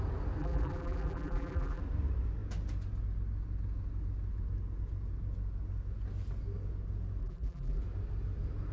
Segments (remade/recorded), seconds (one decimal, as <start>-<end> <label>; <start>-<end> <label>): 0.0-0.4 recorded; 0.4-1.8 remade; 1.8-7.2 recorded; 7.2-7.8 remade; 7.8-8.7 recorded